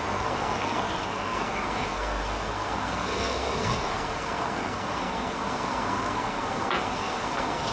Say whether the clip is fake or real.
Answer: fake